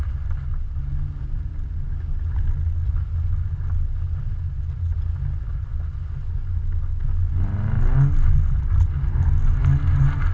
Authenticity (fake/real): real